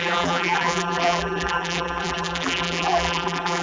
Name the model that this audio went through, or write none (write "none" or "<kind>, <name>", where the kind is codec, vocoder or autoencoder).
vocoder, BigVGAN v2